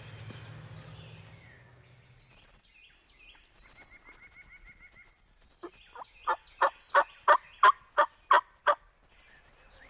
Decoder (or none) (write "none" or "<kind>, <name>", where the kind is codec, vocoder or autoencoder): none